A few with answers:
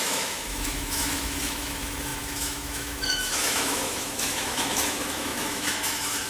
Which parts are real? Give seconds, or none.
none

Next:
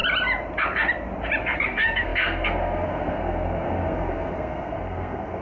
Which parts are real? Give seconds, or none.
0.0-1.4

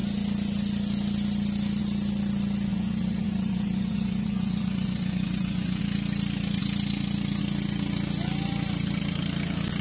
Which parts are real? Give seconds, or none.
0.0-2.7; 5.8-9.8

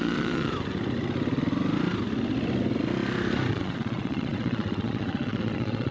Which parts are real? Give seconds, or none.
0.5-3.5